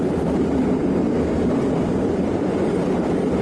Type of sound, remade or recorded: remade